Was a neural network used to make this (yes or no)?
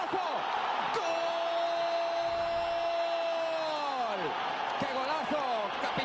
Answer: no